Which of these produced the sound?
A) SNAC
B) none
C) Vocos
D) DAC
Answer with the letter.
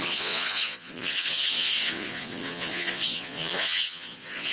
C